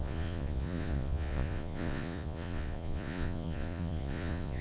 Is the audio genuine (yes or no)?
no